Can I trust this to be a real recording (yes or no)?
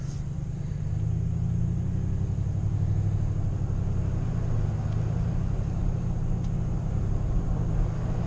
yes